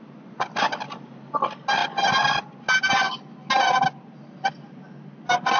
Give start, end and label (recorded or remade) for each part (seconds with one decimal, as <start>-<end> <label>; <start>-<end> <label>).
0.0-5.6 recorded